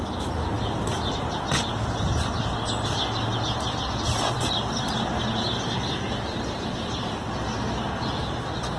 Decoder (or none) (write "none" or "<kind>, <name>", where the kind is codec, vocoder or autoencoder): none